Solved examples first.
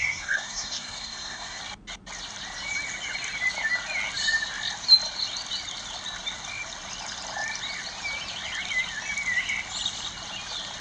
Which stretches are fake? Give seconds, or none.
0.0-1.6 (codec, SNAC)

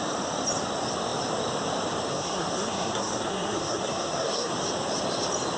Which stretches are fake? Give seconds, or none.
2.1-4.5 (codec, SNAC)